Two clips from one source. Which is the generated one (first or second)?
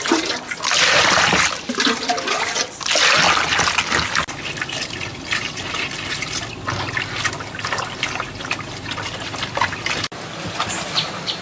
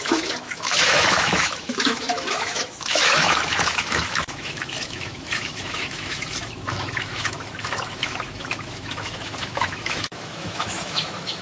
second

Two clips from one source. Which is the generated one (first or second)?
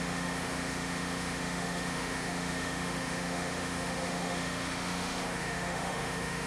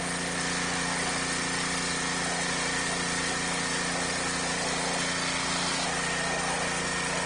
first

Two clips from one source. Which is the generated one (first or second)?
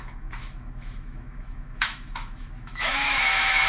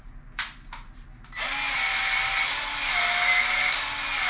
first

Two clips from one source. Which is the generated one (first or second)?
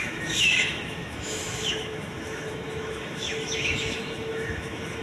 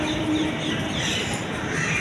first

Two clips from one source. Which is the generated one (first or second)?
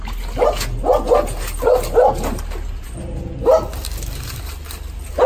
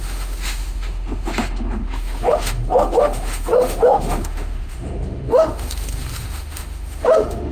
second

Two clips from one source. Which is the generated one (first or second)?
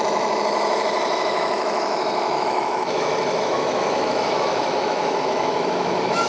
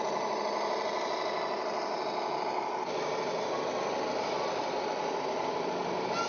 first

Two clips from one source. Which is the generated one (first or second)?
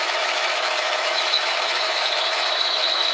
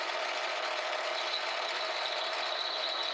first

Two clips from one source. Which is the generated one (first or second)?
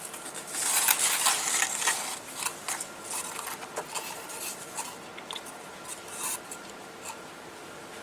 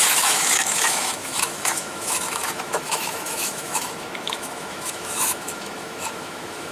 second